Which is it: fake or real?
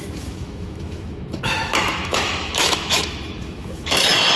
fake